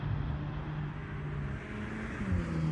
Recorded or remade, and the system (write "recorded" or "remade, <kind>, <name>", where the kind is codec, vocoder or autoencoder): recorded